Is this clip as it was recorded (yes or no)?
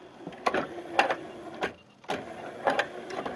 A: yes